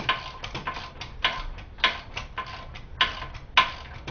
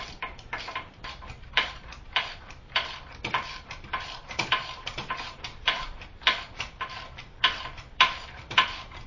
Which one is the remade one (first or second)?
second